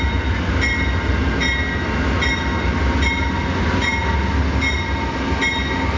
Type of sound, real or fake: real